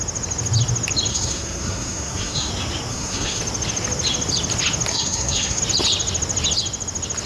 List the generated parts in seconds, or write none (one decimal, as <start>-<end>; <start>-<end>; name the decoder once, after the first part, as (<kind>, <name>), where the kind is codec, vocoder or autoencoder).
1.1-2.5 (codec, SNAC); 2.9-3.4; 4.9-5.6